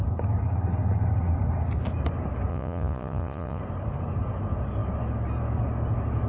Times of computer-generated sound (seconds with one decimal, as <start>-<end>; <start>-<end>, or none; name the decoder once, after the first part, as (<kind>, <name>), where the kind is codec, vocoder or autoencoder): 2.5-3.6 (vocoder, Vocos)